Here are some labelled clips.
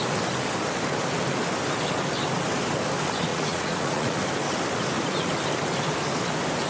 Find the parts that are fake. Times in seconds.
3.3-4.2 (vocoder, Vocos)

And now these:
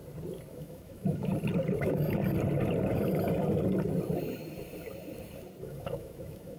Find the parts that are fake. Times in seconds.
0.5-1.3 (autoencoder, DAC-VAE); 1.8-2.2; 5.6-6.6